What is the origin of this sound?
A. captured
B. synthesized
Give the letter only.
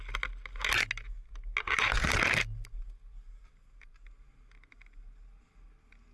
A